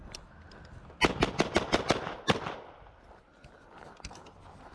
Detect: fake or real real